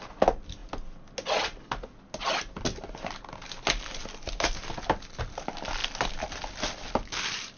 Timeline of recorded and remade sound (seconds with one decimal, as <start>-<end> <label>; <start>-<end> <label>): 0.0-7.6 recorded